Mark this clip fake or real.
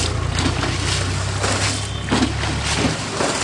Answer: real